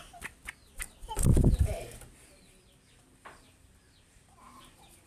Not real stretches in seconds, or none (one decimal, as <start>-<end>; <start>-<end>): 1.3-4.4